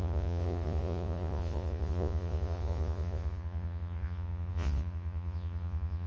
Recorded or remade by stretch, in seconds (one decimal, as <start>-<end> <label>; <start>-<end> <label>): 0.0-6.1 remade